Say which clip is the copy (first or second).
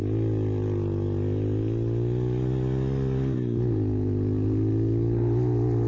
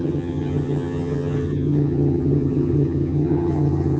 second